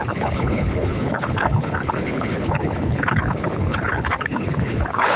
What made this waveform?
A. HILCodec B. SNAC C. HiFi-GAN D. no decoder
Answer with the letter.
A